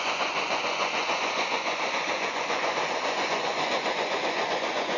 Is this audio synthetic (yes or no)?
yes